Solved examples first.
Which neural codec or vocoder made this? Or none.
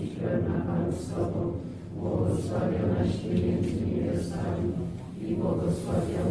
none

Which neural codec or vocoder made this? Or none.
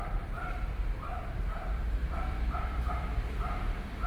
vocoder, BigVGAN v2